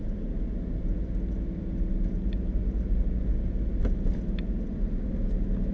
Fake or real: real